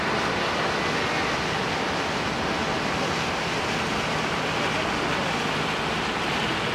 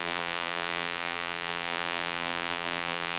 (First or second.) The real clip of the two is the first